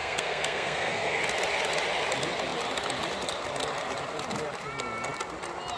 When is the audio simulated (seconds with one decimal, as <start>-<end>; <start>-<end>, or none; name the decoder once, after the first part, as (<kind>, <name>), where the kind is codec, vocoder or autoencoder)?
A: 0.0-1.2 (codec, SNAC)